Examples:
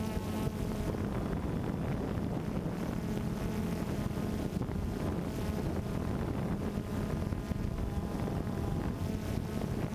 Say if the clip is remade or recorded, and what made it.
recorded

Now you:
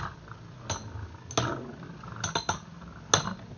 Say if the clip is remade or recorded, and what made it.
recorded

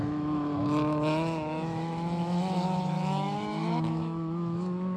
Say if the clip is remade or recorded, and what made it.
remade, autoencoder, DAC-VAE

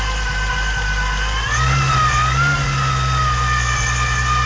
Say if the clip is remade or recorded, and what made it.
recorded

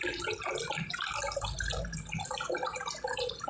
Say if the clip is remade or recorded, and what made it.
recorded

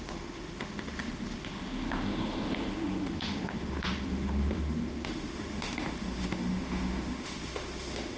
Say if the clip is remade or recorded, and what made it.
remade, autoencoder, DAC-VAE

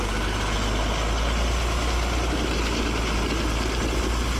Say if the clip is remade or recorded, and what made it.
recorded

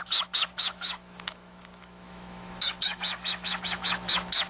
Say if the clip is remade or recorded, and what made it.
remade, autoencoder, DAC-VAE